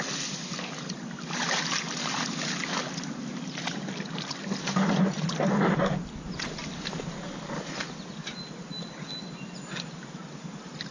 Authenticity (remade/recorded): recorded